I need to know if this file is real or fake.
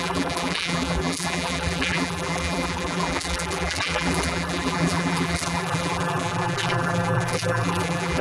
fake